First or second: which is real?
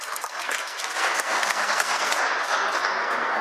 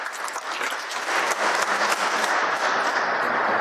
second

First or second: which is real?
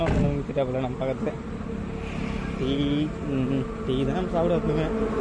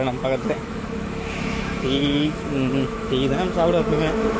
first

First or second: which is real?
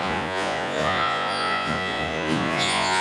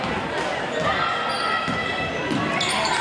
second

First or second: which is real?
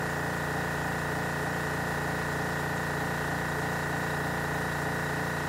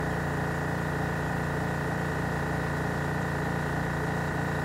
first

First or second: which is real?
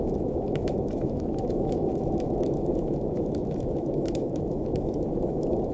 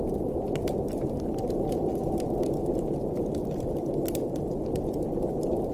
second